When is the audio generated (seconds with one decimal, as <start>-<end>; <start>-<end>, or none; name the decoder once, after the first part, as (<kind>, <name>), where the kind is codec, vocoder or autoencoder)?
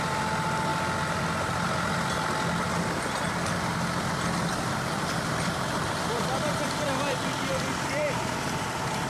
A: 0.0-0.7 (vocoder, BigVGAN v2); 4.6-9.1